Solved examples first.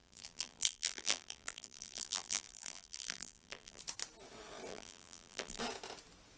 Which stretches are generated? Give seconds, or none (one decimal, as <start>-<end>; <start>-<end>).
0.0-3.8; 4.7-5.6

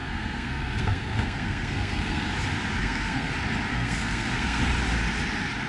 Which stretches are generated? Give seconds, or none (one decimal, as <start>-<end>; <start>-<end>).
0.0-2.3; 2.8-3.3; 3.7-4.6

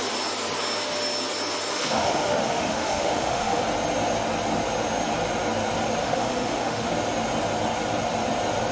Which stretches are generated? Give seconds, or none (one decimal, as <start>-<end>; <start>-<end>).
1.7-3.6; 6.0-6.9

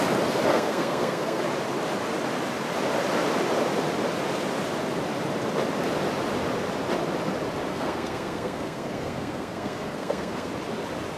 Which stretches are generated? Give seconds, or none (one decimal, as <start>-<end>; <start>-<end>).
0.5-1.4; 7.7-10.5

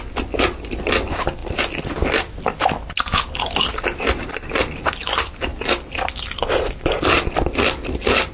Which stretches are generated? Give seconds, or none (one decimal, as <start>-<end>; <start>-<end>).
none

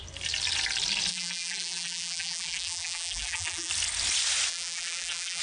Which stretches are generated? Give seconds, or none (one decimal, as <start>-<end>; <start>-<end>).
1.1-3.7; 4.5-5.4

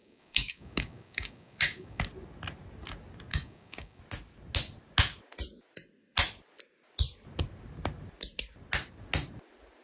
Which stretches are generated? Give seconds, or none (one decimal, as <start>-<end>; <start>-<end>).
0.0-2.0; 3.3-4.0

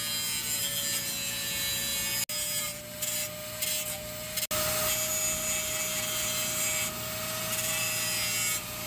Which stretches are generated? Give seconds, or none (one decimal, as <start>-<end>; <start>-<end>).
none